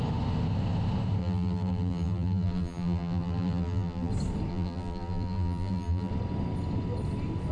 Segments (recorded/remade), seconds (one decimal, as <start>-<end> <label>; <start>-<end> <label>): 0.0-1.2 recorded; 1.2-4.1 remade; 4.1-4.5 recorded; 4.5-6.1 remade; 6.1-7.5 recorded